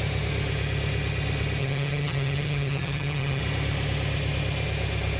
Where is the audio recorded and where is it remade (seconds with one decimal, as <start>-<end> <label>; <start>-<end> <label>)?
0.0-1.6 recorded; 1.6-3.4 remade; 3.4-5.2 recorded

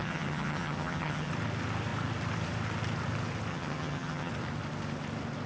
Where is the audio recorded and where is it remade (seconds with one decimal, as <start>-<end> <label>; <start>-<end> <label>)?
0.0-1.3 remade; 1.3-3.5 recorded; 3.5-4.3 remade; 4.3-5.5 recorded

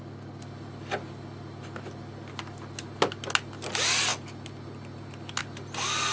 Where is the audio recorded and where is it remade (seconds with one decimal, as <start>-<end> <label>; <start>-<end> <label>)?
0.0-6.1 recorded